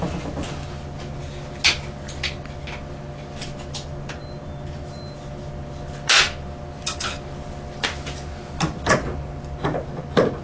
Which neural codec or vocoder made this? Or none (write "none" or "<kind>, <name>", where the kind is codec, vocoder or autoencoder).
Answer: none